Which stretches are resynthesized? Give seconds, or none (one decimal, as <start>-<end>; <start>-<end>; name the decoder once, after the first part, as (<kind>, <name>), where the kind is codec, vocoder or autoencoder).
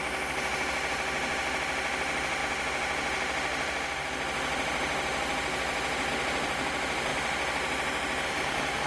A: 7.1-8.3 (vocoder, BigVGAN v2)